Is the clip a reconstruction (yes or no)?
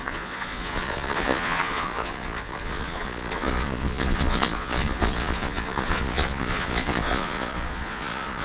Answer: yes